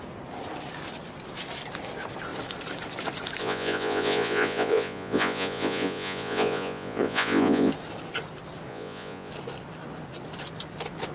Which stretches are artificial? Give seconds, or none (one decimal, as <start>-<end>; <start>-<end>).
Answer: 3.4-7.7; 8.7-9.3